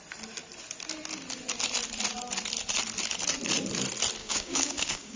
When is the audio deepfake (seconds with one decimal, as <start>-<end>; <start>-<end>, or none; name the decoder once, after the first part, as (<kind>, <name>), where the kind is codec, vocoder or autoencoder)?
4.2-5.2 (codec, DAC)